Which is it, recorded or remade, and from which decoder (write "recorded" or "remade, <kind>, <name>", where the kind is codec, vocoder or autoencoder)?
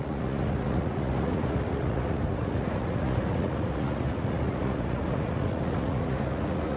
remade, vocoder, Vocos